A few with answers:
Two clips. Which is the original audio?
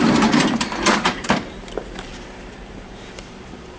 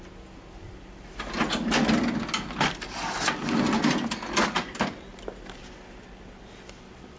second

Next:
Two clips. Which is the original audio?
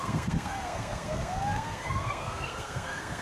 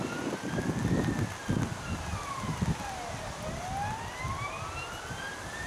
second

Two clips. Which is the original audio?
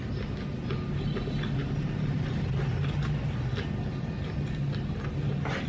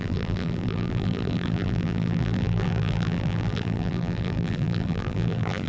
first